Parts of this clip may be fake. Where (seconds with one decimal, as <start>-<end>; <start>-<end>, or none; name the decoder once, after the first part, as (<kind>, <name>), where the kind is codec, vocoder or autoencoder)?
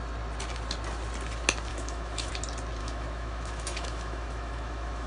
1.7-2.3 (autoencoder, DAC-VAE); 2.8-5.1